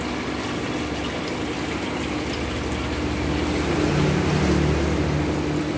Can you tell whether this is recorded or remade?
recorded